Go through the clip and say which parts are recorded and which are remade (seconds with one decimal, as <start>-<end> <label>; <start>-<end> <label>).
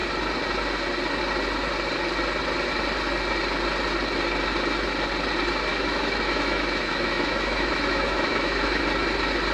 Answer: 0.0-5.7 recorded; 5.7-8.8 remade; 8.8-9.5 recorded